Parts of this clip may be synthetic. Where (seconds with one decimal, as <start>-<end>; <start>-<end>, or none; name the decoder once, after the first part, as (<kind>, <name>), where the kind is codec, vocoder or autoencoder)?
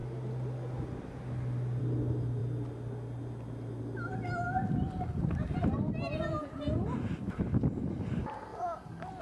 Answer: none